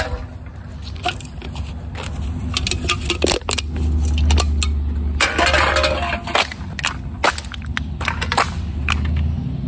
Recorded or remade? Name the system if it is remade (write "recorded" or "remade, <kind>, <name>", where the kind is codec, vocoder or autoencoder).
recorded